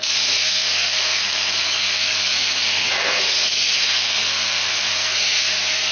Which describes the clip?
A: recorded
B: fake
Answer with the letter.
B